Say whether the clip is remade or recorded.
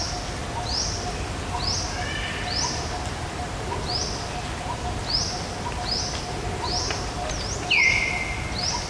recorded